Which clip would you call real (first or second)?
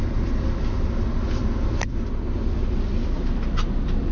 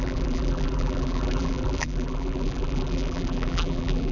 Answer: first